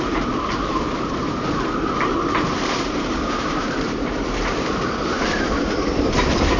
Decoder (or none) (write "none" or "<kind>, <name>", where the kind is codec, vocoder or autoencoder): vocoder, BigVGAN v2